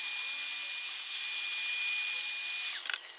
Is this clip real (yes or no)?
yes